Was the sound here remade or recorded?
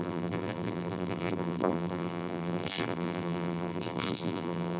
remade